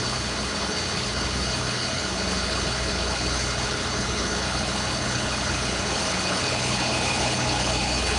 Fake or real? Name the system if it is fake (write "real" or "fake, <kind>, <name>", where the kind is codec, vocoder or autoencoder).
fake, codec, HILCodec